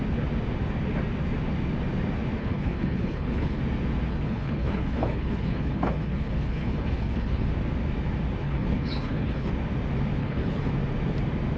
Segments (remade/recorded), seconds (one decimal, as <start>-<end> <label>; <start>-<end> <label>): 0.0-2.4 recorded; 2.4-3.6 remade; 3.6-4.1 recorded; 4.1-7.5 remade; 7.5-8.4 recorded; 8.4-9.5 remade; 9.5-10.2 recorded; 10.2-10.7 remade; 10.7-11.6 recorded